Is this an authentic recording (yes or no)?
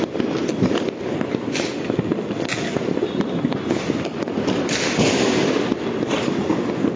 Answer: yes